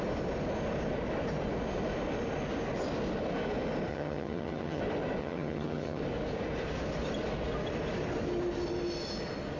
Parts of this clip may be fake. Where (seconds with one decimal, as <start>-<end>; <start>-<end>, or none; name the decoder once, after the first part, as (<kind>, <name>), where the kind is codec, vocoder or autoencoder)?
3.9-4.8 (vocoder, HiFi-GAN); 5.2-6.0

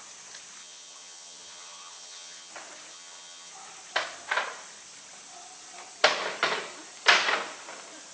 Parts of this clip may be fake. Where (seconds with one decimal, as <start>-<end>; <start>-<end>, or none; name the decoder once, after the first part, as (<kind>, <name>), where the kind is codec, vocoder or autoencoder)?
0.6-2.5 (vocoder, HiFi-GAN); 2.9-3.5

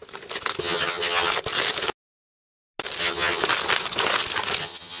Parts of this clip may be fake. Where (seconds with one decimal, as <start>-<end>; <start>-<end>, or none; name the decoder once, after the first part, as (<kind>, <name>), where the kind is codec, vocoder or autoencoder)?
0.6-1.3 (vocoder, HiFi-GAN); 3.0-3.4; 4.6-5.0

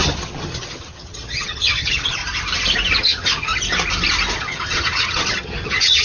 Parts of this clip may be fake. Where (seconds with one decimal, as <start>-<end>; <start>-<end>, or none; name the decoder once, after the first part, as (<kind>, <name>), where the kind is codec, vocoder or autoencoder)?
0.0-2.2 (vocoder, HiFi-GAN); 3.0-3.5; 4.4-6.0

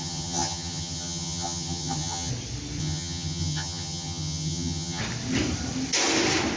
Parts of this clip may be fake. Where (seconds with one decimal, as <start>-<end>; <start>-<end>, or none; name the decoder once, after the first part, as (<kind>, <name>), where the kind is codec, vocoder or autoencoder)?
0.0-2.3 (vocoder, HiFi-GAN); 2.8-5.0